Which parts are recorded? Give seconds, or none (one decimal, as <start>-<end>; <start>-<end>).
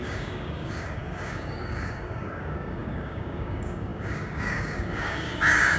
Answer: none